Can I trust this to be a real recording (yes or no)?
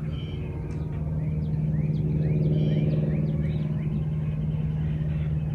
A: yes